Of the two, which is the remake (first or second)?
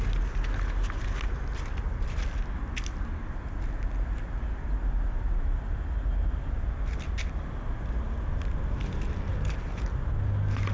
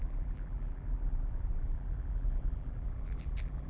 second